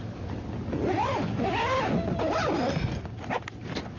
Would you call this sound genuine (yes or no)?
yes